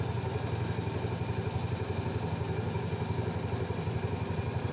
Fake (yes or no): no